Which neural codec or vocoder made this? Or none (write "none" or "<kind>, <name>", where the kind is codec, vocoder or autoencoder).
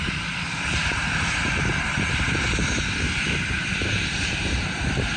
vocoder, BigVGAN v2